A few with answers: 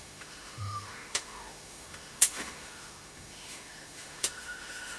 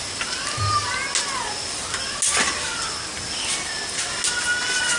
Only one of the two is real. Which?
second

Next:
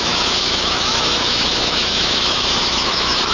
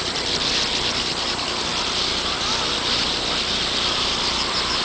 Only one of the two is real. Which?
second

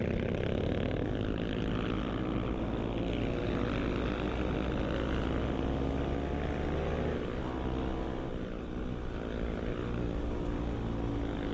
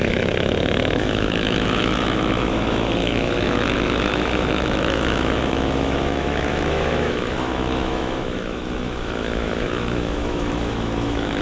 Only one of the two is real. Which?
first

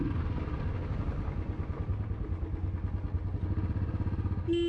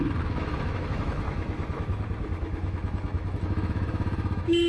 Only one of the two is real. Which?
first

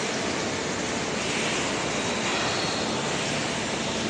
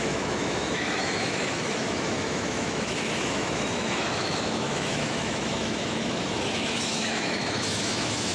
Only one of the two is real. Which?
first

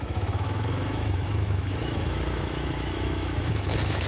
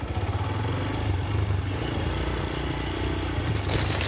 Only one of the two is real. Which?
second